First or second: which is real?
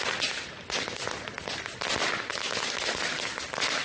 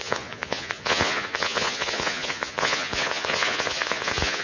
first